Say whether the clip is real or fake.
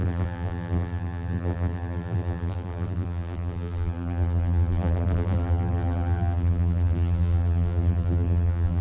fake